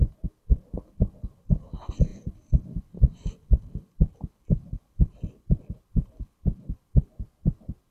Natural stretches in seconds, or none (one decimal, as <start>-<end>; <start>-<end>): 0.0-2.1; 5.6-7.9